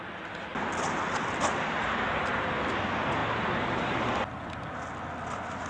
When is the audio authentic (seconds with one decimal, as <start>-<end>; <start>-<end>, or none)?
0.0-5.7